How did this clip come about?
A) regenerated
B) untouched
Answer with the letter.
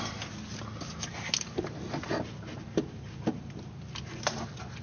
B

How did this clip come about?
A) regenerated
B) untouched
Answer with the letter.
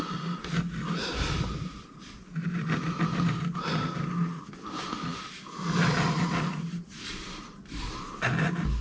B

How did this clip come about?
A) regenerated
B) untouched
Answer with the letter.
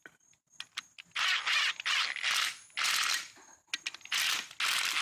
B